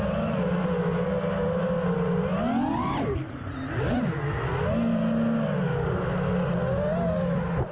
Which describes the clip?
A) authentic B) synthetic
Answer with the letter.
A